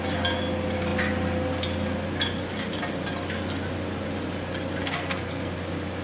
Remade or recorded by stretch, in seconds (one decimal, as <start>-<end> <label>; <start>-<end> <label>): 0.0-4.8 recorded; 4.8-5.5 remade; 5.5-6.0 recorded